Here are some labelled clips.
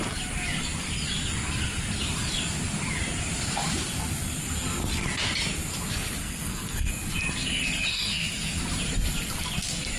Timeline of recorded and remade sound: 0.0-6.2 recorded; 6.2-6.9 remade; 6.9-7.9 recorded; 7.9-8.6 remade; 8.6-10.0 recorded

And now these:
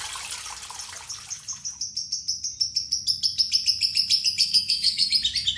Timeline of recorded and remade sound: 0.0-4.4 recorded; 4.4-5.1 remade; 5.1-5.6 recorded